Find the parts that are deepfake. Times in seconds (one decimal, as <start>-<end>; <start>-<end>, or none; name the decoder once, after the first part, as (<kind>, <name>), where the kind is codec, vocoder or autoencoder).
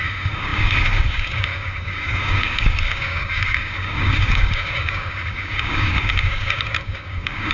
0.0-7.5 (codec, DAC)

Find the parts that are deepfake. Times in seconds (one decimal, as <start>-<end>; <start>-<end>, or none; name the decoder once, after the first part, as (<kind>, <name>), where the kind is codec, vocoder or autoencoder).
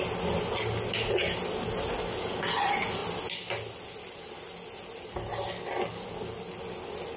none